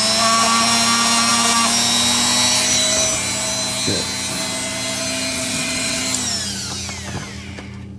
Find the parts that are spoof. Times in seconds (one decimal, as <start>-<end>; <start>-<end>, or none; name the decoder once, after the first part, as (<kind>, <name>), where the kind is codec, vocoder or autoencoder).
5.3-6.0 (vocoder, WaveNeXt)

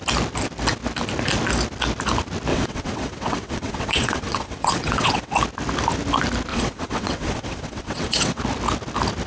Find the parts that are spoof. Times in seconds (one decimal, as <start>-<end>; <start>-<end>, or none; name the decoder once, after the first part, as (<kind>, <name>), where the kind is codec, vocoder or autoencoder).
2.5-5.3 (vocoder, WaveNeXt); 6.5-8.4

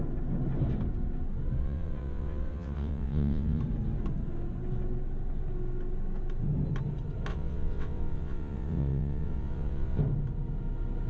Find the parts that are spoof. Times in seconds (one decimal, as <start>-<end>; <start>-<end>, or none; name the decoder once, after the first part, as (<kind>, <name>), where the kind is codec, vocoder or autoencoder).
1.6-3.6 (vocoder, WaveNeXt); 7.3-10.0

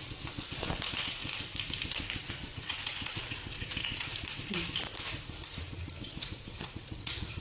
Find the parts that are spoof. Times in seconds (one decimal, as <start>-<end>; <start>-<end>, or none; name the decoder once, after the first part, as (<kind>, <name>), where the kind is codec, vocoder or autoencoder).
0.0-1.2 (vocoder, WaveNeXt); 2.3-4.1; 6.0-7.4

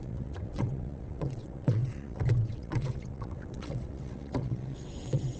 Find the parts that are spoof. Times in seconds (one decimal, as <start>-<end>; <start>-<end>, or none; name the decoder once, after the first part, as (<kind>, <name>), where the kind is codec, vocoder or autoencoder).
0.0-5.4 (vocoder, WaveNeXt)